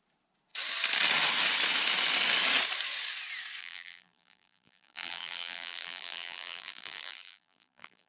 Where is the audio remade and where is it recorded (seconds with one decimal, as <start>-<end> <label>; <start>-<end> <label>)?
0.0-3.6 recorded; 3.6-8.1 remade